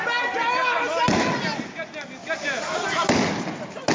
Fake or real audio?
real